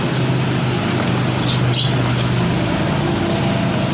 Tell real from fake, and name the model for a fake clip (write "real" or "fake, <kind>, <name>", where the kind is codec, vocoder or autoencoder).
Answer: real